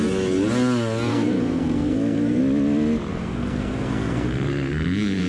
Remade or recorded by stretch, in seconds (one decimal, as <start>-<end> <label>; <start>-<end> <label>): 0.0-1.1 recorded; 1.1-2.4 remade; 2.4-3.1 recorded; 3.1-5.3 remade